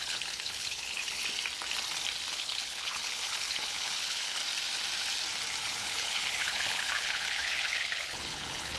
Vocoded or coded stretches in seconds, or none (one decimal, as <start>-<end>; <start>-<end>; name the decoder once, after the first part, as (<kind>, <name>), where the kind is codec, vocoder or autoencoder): 0.0-1.2 (codec, HILCodec); 2.3-4.4; 5.6-8.8